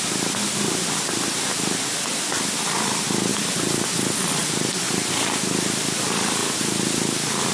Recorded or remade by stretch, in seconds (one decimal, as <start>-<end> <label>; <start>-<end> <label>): 0.0-7.5 recorded